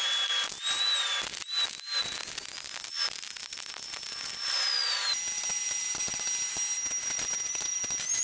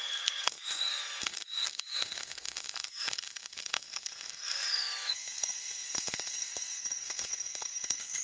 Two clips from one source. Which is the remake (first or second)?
second